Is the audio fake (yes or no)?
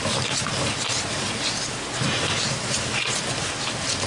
no